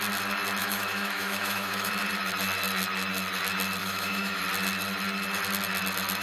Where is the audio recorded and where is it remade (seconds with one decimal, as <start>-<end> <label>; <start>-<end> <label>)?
0.0-0.6 recorded; 0.6-1.9 remade; 1.9-3.8 recorded; 3.8-4.4 remade; 4.4-6.2 recorded